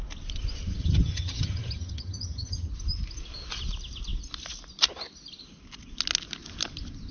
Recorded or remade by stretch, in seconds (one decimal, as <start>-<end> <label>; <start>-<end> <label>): 0.0-0.8 recorded; 0.8-2.7 remade; 2.7-7.1 recorded